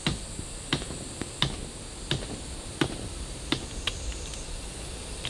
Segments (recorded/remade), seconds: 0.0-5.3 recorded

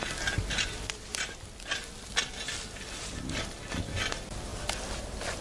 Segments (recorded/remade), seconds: 0.0-1.1 recorded; 1.1-2.3 remade; 2.3-4.5 recorded; 4.5-5.0 remade; 5.0-5.4 recorded

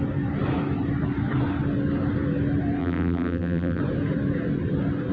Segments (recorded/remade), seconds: 0.0-2.8 recorded; 2.8-3.8 remade; 3.8-5.1 recorded

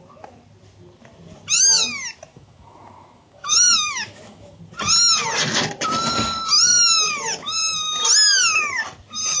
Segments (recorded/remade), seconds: 0.0-2.3 recorded; 2.3-4.6 remade; 4.6-9.4 recorded

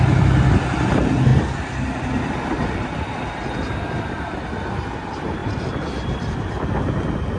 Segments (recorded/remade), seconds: 0.0-1.3 recorded; 1.3-4.2 remade; 4.2-5.4 recorded; 5.4-6.5 remade; 6.5-7.4 recorded

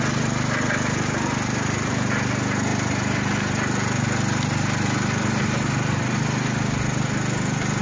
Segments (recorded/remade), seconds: 0.0-7.8 recorded

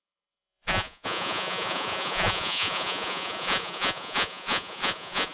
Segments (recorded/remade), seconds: 0.0-5.3 remade

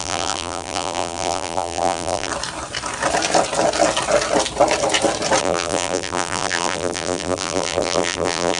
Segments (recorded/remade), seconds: 0.0-2.3 remade; 2.3-5.4 recorded; 5.4-8.6 remade